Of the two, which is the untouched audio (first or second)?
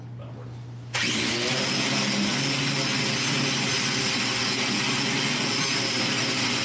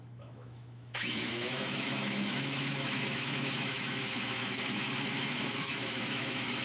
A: first